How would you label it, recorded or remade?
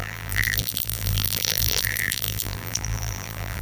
remade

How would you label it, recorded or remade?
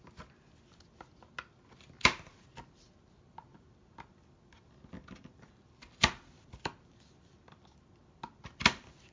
recorded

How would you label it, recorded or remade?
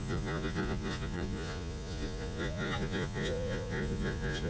remade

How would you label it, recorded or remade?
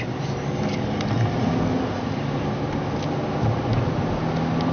recorded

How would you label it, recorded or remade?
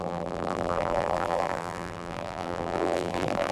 remade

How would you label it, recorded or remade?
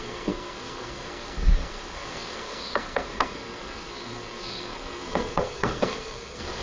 remade